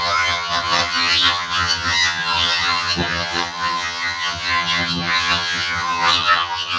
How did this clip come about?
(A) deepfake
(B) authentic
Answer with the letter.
A